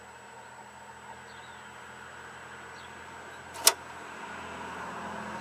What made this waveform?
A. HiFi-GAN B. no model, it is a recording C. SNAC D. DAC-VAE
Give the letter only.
B